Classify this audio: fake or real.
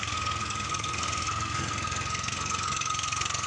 fake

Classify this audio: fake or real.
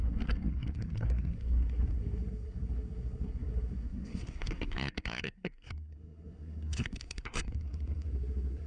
fake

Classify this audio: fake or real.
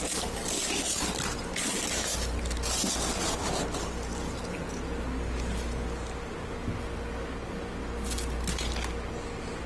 real